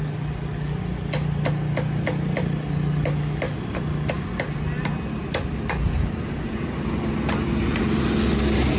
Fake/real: real